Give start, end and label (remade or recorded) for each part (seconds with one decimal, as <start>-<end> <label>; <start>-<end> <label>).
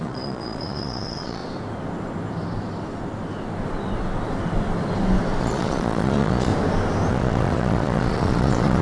0.0-1.4 remade; 1.4-5.4 recorded; 5.4-6.5 remade; 6.5-7.1 recorded; 7.1-8.8 remade